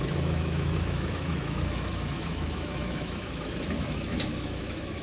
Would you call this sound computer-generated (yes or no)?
yes